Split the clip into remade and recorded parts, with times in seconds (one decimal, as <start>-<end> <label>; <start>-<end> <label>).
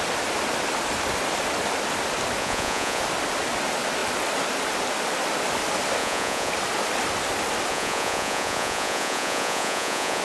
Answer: 0.0-2.4 recorded; 2.4-3.0 remade; 3.0-6.0 recorded; 6.0-6.5 remade; 6.5-7.7 recorded; 7.7-10.2 remade